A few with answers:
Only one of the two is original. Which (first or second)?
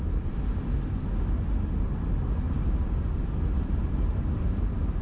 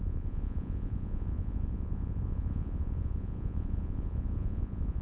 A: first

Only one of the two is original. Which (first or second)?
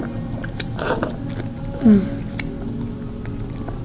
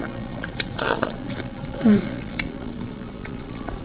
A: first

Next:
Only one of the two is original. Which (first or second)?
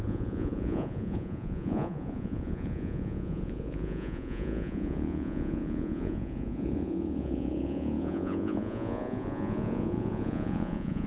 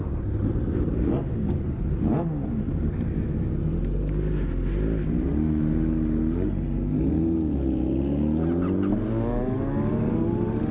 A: second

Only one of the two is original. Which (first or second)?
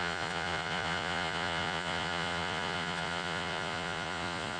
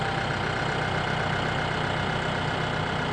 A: second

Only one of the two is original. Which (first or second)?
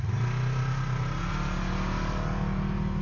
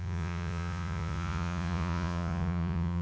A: first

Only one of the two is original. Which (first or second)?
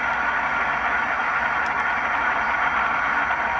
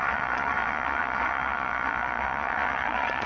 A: first